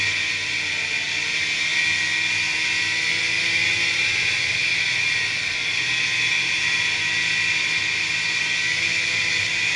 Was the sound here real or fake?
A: real